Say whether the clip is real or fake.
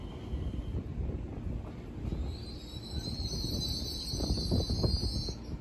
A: real